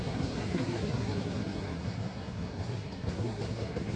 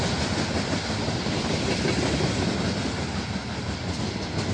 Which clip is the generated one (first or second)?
first